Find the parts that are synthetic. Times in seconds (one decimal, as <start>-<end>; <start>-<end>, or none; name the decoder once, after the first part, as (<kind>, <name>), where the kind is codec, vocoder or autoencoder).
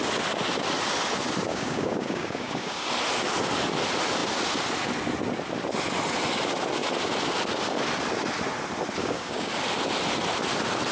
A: 1.5-2.9 (codec, DAC); 9.0-9.5